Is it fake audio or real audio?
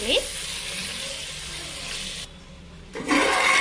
real